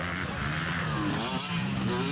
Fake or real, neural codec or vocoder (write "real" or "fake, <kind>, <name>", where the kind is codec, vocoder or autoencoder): real